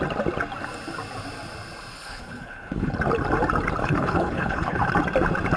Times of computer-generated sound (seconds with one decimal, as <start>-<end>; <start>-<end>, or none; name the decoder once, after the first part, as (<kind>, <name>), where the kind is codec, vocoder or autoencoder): 1.9-2.9 (codec, HILCodec); 3.8-4.9